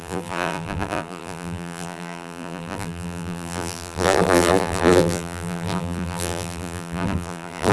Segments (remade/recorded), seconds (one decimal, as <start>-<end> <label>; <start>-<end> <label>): 0.0-7.7 remade